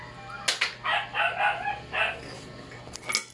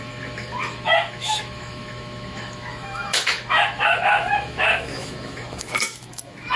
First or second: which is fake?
second